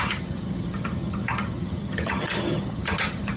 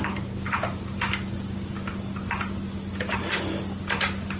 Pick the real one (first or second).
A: second